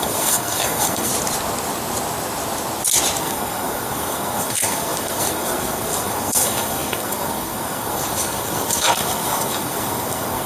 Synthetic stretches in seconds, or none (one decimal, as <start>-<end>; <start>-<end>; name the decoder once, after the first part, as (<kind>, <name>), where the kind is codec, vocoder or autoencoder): 0.0-1.1 (codec, SNAC); 3.2-10.5